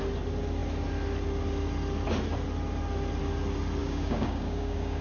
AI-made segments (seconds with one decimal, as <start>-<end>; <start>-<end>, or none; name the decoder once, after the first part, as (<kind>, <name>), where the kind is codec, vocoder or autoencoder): 3.8-5.0 (codec, DAC)